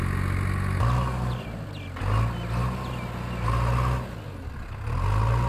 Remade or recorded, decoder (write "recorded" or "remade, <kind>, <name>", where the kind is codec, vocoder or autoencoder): recorded